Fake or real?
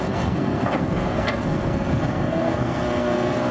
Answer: fake